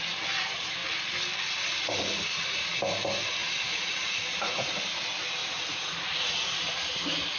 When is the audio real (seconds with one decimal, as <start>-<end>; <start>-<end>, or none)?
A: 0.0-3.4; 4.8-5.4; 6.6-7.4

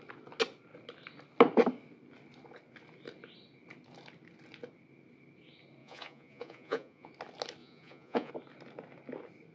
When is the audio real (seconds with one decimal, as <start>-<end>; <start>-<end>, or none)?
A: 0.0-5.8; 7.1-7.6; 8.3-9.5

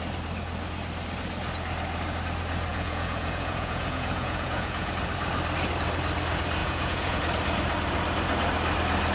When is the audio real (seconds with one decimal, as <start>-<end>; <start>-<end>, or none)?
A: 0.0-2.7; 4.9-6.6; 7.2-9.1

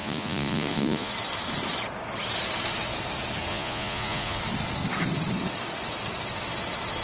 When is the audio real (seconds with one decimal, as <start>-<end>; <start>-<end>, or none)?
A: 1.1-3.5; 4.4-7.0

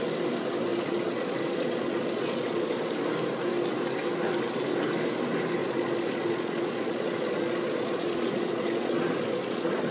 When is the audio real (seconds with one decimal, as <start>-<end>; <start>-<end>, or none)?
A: 0.0-0.7; 2.8-5.6

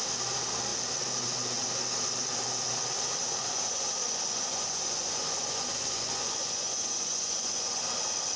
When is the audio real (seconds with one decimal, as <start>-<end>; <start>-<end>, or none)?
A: 0.0-3.2; 7.8-8.4